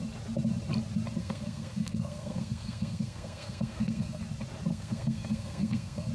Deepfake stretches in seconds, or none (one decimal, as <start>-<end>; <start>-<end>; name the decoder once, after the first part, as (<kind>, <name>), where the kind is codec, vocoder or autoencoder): 1.2-4.2 (codec, SNAC); 4.7-6.1